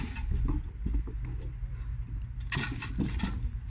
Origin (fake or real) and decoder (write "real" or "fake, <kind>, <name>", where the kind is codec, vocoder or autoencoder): real